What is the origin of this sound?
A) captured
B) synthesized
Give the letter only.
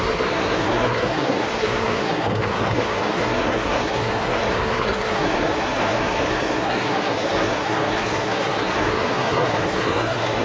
B